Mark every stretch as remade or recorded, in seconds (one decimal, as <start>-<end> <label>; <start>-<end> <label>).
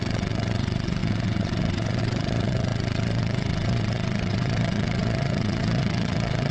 0.0-6.5 remade